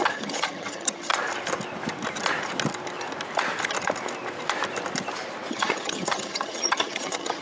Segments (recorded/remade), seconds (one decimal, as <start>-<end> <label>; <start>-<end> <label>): 0.0-1.1 remade; 1.1-5.5 recorded; 5.5-7.4 remade